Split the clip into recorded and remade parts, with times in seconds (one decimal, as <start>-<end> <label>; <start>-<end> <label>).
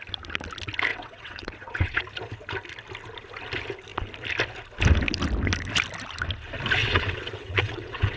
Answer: 0.0-0.9 recorded; 0.9-2.0 remade; 2.0-6.8 recorded; 6.8-8.2 remade